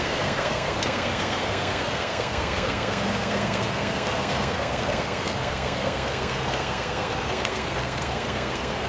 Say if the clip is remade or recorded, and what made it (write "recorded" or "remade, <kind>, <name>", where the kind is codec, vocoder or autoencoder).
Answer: remade, codec, SNAC